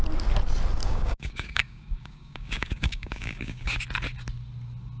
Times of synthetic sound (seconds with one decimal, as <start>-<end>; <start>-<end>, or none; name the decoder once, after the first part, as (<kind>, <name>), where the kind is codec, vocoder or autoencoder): 0.8-3.8 (codec, DAC)